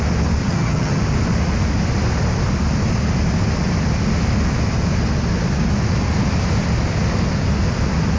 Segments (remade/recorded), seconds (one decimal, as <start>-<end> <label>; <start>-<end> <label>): 0.0-0.4 recorded; 0.4-1.0 remade; 1.0-8.2 recorded